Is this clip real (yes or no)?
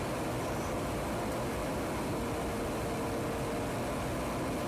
yes